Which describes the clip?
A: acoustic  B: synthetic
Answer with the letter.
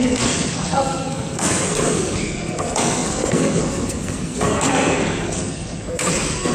B